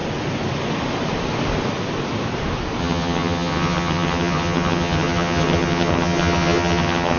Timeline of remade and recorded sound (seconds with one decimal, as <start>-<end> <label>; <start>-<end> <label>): 0.0-2.8 recorded; 2.8-7.2 remade